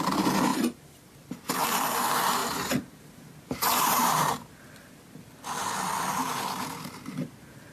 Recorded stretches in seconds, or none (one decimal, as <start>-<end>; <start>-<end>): 0.0-0.5; 1.1-2.4; 4.9-7.7